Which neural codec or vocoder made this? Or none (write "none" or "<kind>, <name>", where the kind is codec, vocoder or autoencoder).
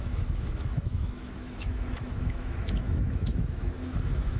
autoencoder, DAC-VAE